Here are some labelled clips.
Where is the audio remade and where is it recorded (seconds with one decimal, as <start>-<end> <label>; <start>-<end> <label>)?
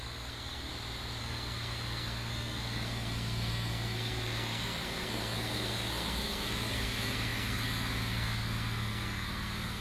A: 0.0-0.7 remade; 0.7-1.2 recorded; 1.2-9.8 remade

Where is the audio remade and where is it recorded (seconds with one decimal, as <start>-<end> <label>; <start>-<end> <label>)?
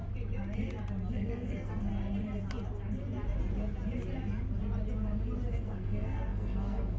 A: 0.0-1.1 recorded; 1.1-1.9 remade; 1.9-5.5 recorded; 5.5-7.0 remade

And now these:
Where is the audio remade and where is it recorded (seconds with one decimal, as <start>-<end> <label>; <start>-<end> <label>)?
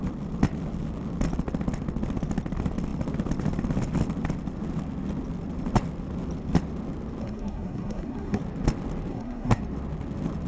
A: 0.0-7.2 recorded; 7.2-8.4 remade; 8.4-9.1 recorded; 9.1-9.6 remade; 9.6-10.5 recorded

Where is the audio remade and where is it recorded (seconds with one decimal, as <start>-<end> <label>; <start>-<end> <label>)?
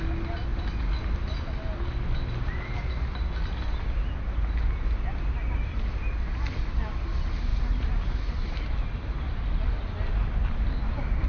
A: 0.0-11.3 recorded